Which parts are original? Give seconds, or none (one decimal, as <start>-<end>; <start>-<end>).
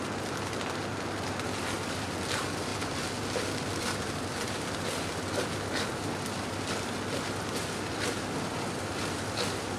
2.7-3.8